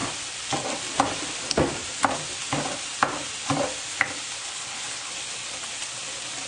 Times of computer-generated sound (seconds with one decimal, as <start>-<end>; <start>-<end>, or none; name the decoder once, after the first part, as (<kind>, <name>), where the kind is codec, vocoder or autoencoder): 4.4-5.1 (codec, HILCodec)